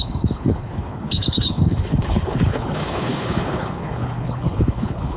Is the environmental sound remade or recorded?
remade